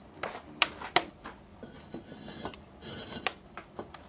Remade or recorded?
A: recorded